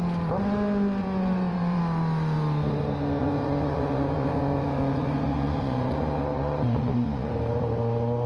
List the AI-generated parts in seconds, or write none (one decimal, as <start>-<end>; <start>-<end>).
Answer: 1.0-1.8; 3.2-7.3